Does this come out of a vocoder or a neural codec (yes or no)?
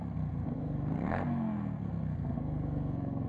yes